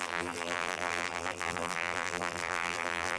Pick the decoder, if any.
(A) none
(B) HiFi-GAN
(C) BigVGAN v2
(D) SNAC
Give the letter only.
C